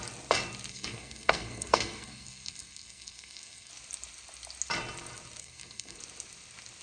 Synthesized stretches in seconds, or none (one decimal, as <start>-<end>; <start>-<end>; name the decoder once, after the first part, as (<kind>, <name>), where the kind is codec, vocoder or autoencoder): 0.7-3.7 (codec, SNAC); 5.4-6.0